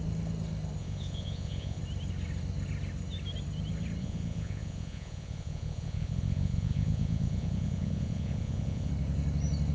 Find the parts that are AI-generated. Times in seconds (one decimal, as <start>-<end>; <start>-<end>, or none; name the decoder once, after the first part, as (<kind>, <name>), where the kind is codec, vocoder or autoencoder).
0.8-1.8 (vocoder, Vocos); 4.0-8.9